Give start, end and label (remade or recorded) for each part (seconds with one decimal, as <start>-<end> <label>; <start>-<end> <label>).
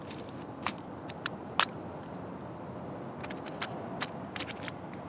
0.0-1.4 remade; 1.4-4.5 recorded; 4.5-5.1 remade